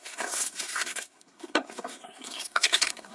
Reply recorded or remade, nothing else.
remade